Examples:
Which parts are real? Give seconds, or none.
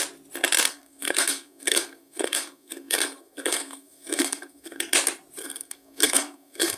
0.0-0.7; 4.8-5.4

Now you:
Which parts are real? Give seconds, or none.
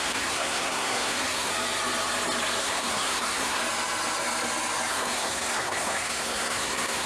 1.5-2.6; 3.6-4.9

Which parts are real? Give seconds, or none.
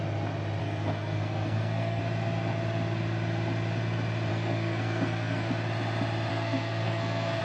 0.0-0.6; 2.0-4.3; 5.5-6.3